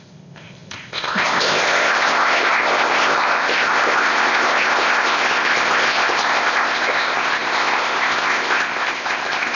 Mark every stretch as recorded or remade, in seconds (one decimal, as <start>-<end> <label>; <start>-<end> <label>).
0.0-9.5 remade